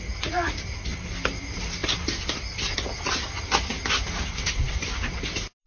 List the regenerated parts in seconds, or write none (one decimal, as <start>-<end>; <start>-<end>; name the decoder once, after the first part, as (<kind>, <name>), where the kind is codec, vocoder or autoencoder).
none